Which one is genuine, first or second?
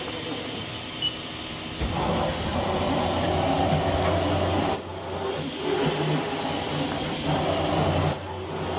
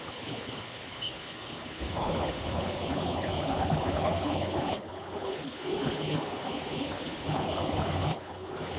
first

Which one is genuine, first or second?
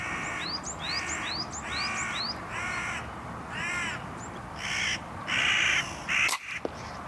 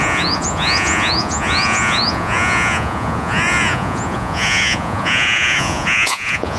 first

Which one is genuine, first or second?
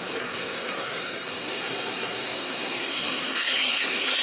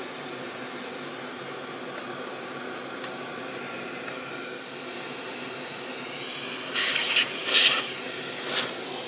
second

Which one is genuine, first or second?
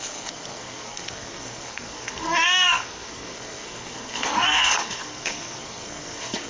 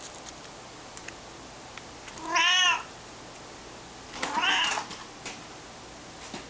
second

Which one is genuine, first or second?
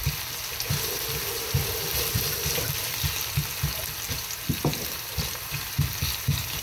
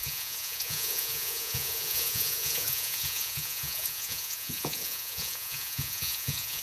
first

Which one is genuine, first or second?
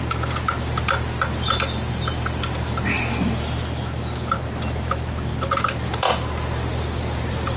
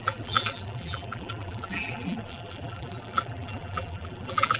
first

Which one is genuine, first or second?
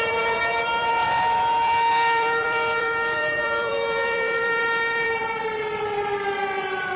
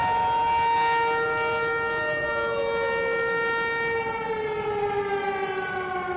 second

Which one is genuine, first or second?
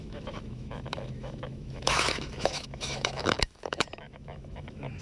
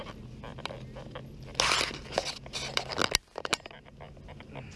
second